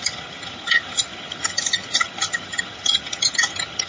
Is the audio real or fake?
fake